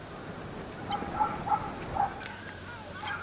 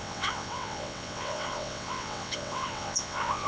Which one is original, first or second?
first